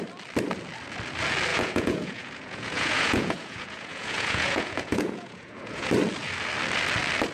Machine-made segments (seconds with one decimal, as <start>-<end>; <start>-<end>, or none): 1.5-5.9